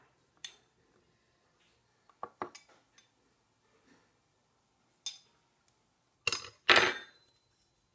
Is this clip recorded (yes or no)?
yes